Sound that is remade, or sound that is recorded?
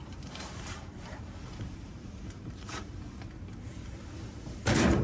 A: remade